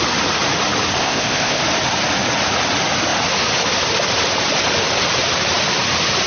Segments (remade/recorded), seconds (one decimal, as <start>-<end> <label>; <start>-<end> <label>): 0.0-1.0 recorded; 1.0-1.6 remade; 1.6-6.3 recorded